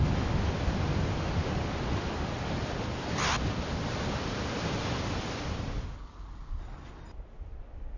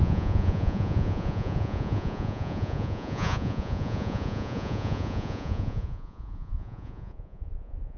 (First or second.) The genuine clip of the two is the first